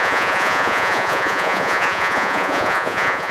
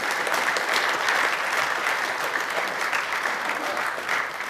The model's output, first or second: first